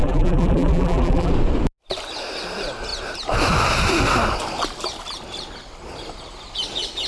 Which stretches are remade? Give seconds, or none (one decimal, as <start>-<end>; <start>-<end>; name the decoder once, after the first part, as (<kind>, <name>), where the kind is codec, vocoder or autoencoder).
0.0-1.3 (vocoder, BigVGAN v2)